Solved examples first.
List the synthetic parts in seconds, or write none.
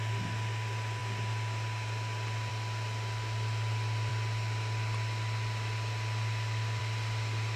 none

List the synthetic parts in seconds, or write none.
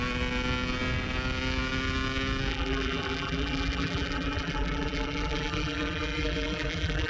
2.5-7.1 (vocoder, BigVGAN v2)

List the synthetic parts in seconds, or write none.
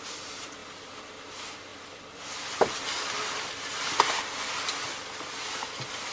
1.7-3.6 (vocoder, BigVGAN v2)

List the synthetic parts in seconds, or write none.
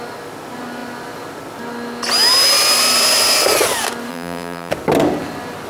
4.1-4.7 (vocoder, BigVGAN v2)